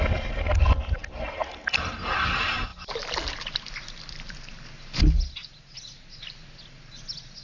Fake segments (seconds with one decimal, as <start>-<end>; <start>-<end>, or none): none